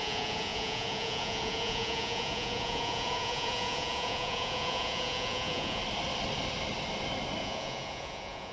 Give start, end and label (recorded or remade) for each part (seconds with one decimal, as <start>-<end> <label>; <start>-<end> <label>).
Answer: 0.0-5.8 remade; 5.8-7.4 recorded; 7.4-8.5 remade